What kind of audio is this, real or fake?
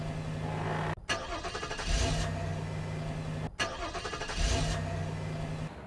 real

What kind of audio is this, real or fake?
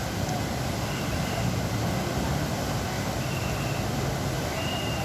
real